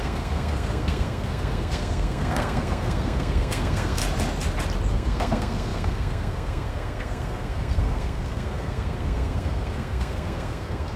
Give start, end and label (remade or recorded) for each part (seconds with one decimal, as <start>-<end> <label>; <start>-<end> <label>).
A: 0.0-4.0 remade; 4.0-4.9 recorded; 4.9-11.0 remade